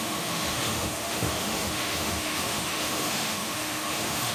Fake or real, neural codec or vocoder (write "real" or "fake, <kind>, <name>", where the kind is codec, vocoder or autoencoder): fake, autoencoder, DAC-VAE